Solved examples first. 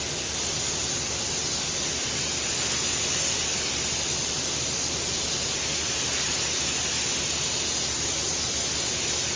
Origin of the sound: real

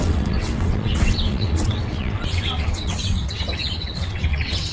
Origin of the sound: fake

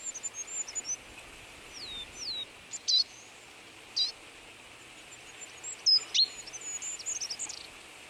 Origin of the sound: real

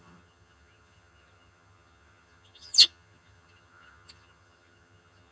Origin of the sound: fake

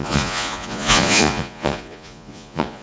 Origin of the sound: fake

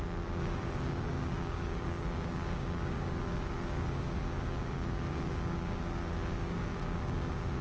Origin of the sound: fake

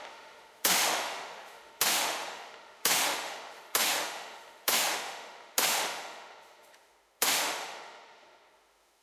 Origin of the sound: fake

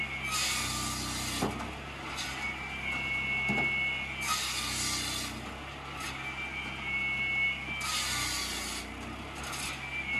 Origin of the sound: real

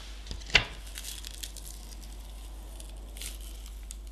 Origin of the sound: real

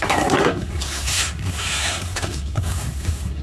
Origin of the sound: fake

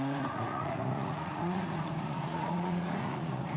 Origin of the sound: fake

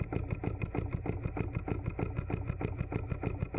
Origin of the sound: real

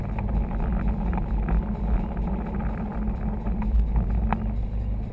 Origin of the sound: real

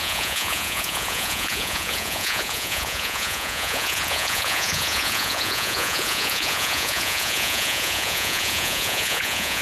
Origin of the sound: fake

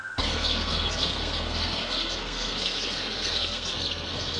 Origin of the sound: fake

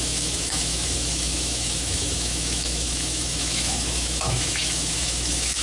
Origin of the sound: fake